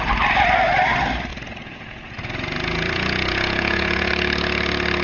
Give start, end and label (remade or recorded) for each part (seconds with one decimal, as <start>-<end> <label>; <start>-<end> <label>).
0.0-1.3 recorded; 1.3-4.1 remade; 4.1-5.0 recorded